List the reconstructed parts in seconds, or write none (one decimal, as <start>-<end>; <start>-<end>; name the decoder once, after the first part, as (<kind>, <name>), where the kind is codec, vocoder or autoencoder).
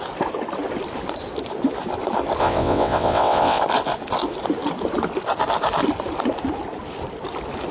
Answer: 2.4-3.6 (vocoder, WaveNeXt)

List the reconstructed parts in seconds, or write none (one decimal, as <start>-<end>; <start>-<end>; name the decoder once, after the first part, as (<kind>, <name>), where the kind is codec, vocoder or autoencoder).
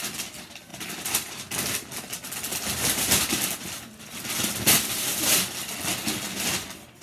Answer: 0.7-1.4 (vocoder, BigVGAN v2); 2.5-3.5